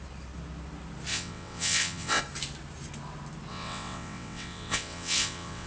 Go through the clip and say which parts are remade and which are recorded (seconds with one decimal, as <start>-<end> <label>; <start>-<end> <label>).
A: 0.0-1.1 recorded; 1.1-2.2 remade; 2.2-3.5 recorded; 3.5-5.7 remade